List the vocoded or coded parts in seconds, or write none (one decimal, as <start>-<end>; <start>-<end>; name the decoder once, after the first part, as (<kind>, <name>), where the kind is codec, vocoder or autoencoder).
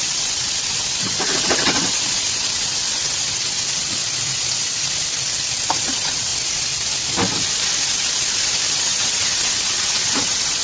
0.0-4.0 (vocoder, WaveNeXt); 5.8-6.3; 8.7-10.6